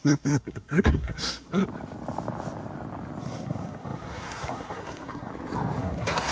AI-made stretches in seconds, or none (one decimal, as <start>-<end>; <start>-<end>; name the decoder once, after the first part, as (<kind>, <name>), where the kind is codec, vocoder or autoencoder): 0.0-1.6 (codec, SNAC); 3.2-5.3; 5.8-6.3